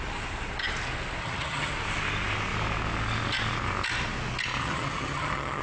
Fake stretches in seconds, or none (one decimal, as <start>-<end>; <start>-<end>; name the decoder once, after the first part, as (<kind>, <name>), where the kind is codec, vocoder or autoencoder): 1.2-1.7 (vocoder, HiFi-GAN); 4.6-5.6